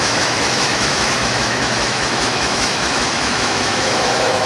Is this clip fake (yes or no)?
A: yes